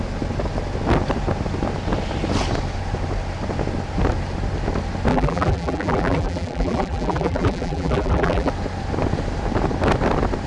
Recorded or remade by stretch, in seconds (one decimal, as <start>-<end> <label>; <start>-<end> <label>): 0.0-5.1 recorded; 5.1-8.5 remade; 8.5-10.5 recorded